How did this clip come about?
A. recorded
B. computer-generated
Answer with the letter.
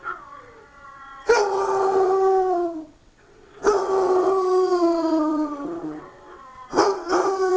B